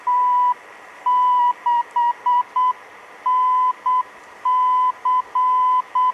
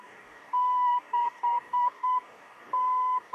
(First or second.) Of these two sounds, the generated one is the second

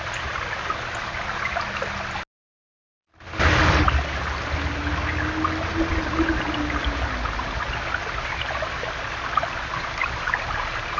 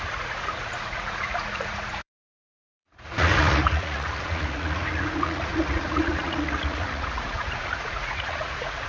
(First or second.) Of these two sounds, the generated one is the second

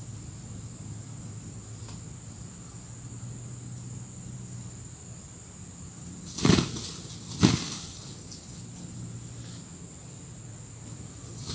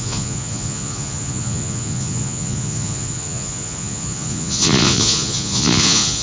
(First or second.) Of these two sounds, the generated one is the second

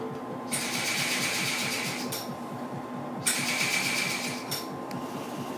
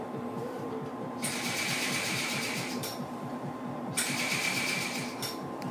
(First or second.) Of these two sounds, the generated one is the second